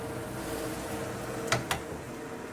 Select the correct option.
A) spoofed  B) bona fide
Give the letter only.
B